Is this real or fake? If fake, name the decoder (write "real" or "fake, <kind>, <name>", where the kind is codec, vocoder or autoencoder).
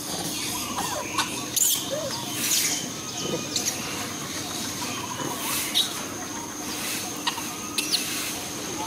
real